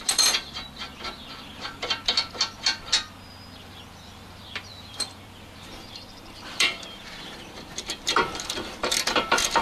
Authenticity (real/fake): fake